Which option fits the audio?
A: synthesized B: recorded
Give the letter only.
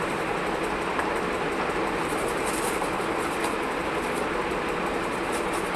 B